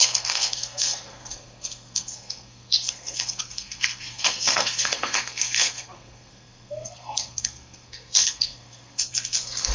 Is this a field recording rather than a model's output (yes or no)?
no